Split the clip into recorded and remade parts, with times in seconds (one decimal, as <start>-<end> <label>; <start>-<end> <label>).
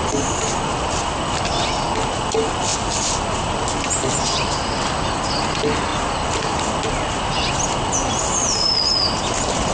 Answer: 0.0-9.7 recorded